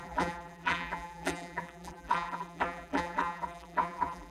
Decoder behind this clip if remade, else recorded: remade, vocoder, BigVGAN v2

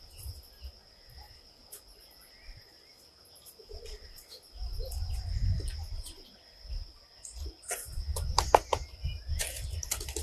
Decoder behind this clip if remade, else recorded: recorded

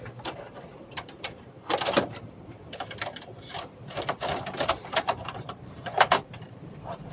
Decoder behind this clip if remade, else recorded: remade, vocoder, BigVGAN v2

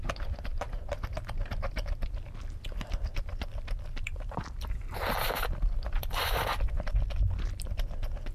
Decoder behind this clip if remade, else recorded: remade, vocoder, BigVGAN v2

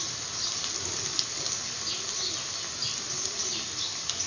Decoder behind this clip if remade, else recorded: recorded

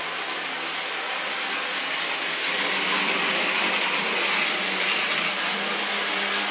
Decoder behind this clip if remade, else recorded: recorded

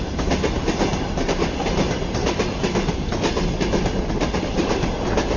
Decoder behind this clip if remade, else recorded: remade, vocoder, BigVGAN v2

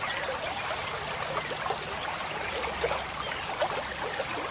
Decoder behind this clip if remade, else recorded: recorded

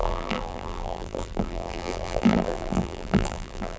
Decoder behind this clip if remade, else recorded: remade, vocoder, BigVGAN v2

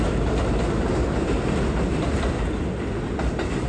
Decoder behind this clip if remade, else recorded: recorded